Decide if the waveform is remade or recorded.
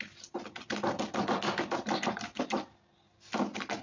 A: recorded